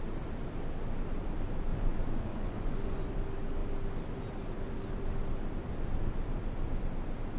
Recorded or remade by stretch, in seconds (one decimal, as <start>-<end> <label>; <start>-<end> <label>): 0.0-1.7 recorded; 1.7-3.1 remade; 3.1-7.4 recorded